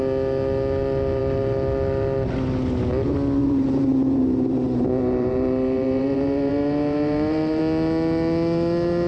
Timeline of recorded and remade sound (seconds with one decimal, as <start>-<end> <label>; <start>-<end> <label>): 0.0-3.4 recorded; 3.4-7.6 remade; 7.6-9.1 recorded